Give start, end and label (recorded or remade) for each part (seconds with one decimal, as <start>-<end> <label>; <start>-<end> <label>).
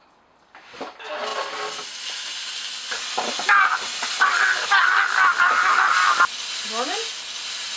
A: 0.0-7.8 recorded